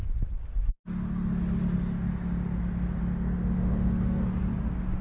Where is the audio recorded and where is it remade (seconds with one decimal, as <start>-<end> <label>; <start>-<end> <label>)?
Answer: 0.0-3.4 recorded; 3.4-4.2 remade; 4.2-5.0 recorded